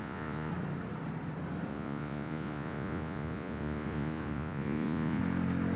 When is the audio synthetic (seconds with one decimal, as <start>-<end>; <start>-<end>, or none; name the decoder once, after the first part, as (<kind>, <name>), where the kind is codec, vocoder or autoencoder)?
0.0-0.5 (vocoder, Vocos); 1.7-5.2